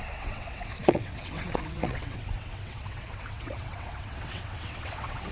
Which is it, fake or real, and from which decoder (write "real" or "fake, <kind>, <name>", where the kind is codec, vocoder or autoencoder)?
fake, vocoder, WaveNeXt